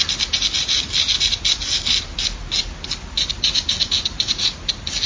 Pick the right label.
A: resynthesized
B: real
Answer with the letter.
B